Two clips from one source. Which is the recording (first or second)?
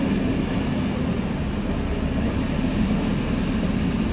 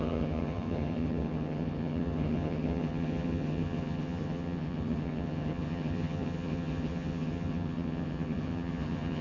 first